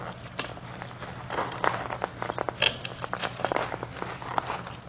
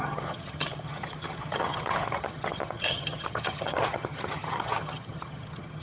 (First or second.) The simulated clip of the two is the second